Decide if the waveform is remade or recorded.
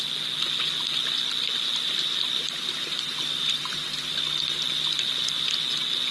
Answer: recorded